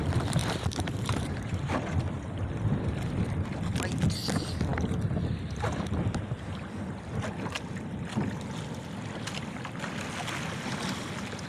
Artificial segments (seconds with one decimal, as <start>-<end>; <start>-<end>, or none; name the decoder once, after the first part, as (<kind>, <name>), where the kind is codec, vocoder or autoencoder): 0.4-1.7 (vocoder, BigVGAN v2)